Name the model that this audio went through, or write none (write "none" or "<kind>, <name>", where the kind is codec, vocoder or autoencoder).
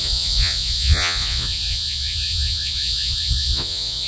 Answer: vocoder, Vocos